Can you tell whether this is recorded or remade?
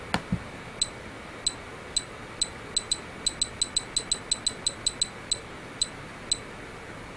recorded